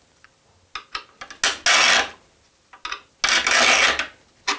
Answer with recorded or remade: recorded